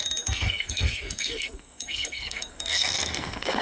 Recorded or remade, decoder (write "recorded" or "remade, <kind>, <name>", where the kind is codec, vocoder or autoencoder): remade, codec, SNAC